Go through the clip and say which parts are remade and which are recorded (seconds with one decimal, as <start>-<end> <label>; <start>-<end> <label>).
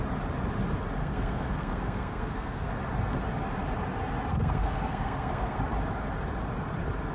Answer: 0.0-1.0 recorded; 1.0-2.7 remade; 2.7-4.3 recorded; 4.3-5.6 remade; 5.6-7.1 recorded